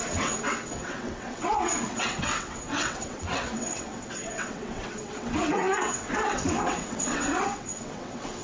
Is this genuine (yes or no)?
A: no